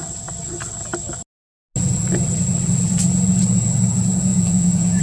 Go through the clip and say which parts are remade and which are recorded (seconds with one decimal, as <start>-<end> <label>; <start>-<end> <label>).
0.0-4.3 recorded; 4.3-5.0 remade